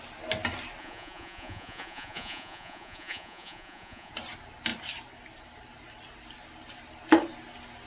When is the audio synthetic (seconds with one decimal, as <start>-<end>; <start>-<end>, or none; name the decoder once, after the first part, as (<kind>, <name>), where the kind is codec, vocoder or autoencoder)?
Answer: 0.8-4.1 (vocoder, Vocos)